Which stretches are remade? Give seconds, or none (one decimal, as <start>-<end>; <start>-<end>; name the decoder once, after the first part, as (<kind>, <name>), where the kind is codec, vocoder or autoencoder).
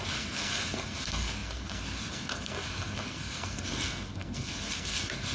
0.0-5.3 (codec, SNAC)